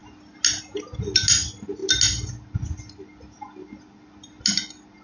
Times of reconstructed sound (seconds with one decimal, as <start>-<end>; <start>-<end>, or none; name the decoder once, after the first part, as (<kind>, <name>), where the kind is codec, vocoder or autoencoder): none